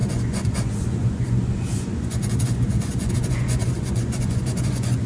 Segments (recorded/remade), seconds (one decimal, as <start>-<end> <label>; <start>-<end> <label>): 0.0-5.1 remade

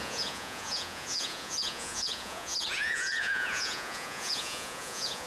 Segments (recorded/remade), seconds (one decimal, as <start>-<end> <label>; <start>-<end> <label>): 0.0-5.3 remade

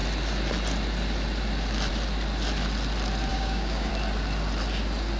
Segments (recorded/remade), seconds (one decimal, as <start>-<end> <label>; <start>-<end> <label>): 0.0-3.3 recorded; 3.3-3.9 remade; 3.9-5.2 recorded